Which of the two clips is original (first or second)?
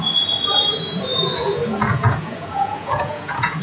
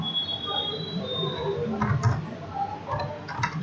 second